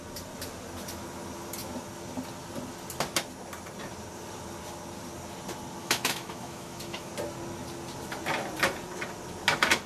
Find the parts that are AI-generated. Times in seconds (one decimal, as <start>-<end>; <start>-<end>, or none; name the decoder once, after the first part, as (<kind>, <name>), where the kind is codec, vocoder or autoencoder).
5.8-7.1 (autoencoder, DAC-VAE)